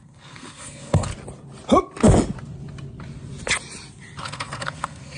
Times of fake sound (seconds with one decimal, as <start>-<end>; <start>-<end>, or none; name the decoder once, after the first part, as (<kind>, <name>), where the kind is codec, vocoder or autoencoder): 0.0-1.1 (codec, SNAC); 4.2-5.2